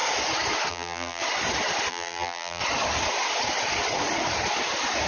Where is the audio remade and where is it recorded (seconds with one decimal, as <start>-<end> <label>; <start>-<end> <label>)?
0.0-0.7 recorded; 0.7-1.2 remade; 1.2-1.9 recorded; 1.9-2.6 remade; 2.6-5.1 recorded